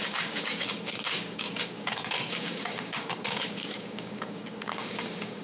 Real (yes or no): no